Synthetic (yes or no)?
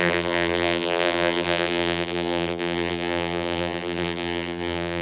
yes